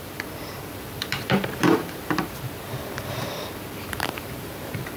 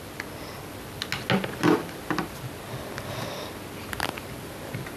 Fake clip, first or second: first